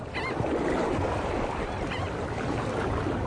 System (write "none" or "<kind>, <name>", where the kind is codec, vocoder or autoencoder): none